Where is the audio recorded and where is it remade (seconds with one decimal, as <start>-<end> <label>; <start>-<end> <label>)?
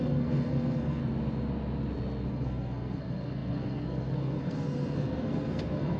0.0-1.0 remade; 1.0-2.3 recorded; 2.3-6.0 remade